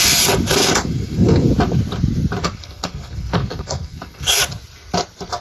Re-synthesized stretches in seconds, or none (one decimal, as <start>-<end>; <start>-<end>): 0.6-1.5; 2.4-4.4